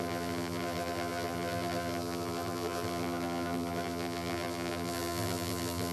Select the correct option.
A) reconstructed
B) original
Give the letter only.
A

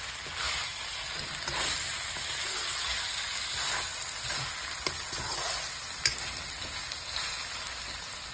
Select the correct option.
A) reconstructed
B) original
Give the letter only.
B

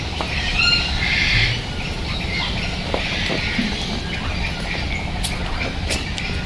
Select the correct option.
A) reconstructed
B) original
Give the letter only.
B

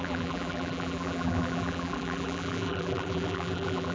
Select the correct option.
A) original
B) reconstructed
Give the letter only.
B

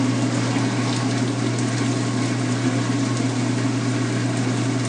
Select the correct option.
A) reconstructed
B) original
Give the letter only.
B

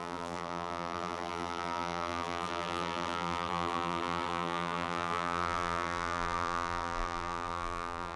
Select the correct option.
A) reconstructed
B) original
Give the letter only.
A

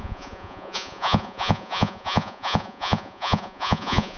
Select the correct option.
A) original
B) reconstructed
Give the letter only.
B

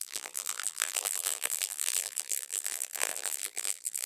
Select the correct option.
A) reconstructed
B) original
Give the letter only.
A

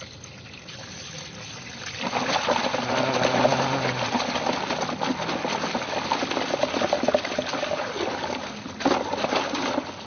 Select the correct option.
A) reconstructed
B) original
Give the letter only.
B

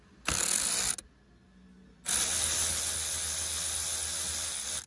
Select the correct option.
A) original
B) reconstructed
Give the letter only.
A